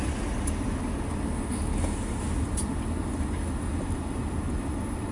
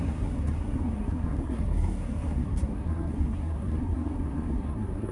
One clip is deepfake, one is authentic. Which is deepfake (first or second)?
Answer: second